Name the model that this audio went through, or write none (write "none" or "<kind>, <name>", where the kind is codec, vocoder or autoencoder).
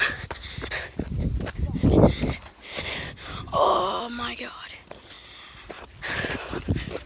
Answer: none